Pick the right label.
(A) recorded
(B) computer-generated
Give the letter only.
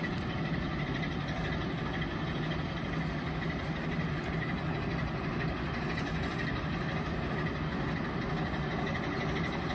A